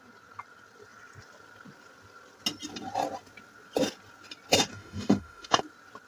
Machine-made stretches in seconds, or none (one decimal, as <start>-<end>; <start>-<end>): 4.7-5.6